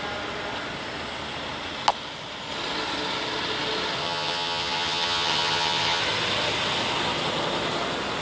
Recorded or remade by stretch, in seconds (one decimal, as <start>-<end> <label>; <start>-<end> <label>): 0.0-4.0 recorded; 4.0-6.0 remade; 6.0-8.2 recorded

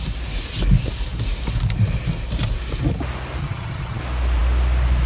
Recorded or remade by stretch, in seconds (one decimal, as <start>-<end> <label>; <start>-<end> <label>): 0.0-3.4 recorded; 3.4-4.0 remade; 4.0-5.1 recorded